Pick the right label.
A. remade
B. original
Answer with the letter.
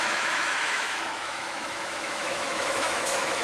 A